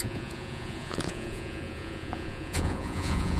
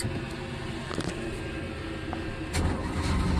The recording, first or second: second